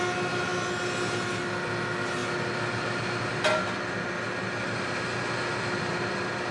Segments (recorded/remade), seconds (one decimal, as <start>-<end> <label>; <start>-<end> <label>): 0.0-6.5 recorded